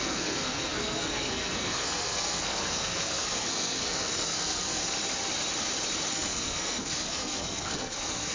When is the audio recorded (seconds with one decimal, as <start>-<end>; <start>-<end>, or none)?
4.8-6.1